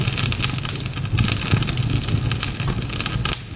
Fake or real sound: real